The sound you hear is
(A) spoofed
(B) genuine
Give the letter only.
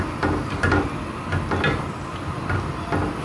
B